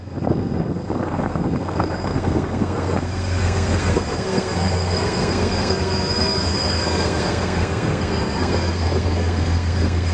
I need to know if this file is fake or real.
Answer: fake